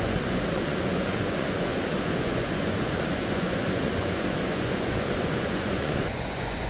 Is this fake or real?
fake